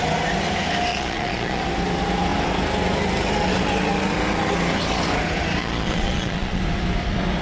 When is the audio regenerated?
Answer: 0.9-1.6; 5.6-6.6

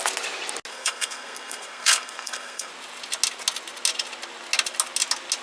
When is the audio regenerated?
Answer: 0.7-2.7